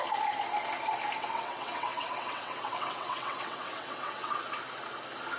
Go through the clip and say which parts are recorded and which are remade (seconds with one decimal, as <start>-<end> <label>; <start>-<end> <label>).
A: 0.0-1.2 recorded; 1.2-4.4 remade; 4.4-5.4 recorded